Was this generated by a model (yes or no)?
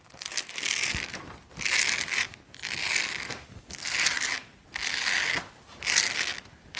no